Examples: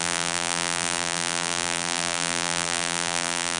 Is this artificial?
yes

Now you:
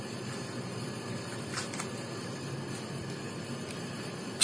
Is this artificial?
yes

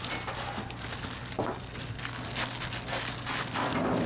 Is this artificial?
no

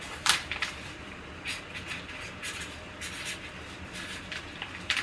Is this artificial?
yes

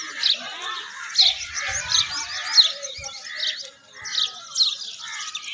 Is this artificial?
no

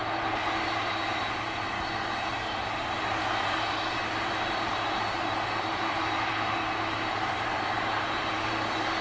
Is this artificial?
yes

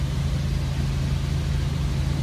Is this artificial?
no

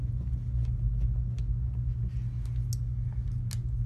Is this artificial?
no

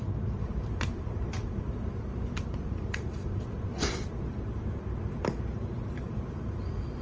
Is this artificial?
yes